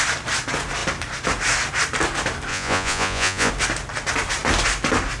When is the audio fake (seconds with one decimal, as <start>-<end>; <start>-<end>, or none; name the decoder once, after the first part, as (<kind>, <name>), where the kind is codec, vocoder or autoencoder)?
2.5-3.5 (vocoder, Vocos)